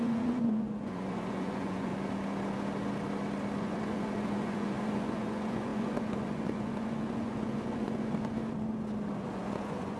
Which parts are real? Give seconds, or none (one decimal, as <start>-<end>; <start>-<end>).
1.9-3.6; 8.4-9.3